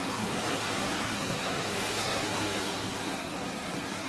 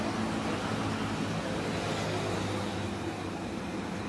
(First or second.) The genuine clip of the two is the second